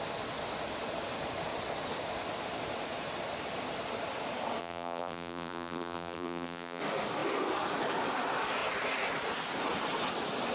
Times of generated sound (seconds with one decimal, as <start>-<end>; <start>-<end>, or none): 4.6-6.8